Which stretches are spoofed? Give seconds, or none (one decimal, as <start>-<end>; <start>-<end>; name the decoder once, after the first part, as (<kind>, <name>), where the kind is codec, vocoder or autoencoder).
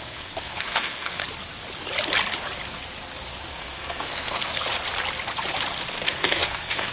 0.0-1.2 (codec, SNAC); 3.5-4.5; 5.9-6.9